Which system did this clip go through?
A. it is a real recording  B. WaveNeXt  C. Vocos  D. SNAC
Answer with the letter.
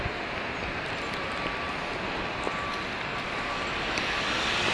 A